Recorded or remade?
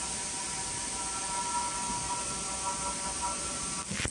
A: recorded